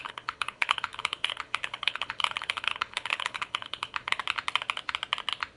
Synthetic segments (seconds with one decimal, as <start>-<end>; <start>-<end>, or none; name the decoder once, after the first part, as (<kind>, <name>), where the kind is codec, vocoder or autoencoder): 0.0-4.2 (codec, HILCodec)